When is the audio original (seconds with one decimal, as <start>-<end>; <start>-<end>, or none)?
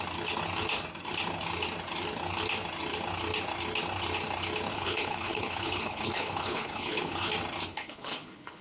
0.0-4.7; 7.3-7.7